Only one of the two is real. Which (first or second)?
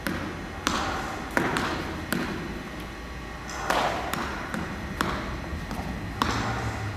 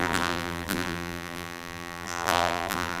first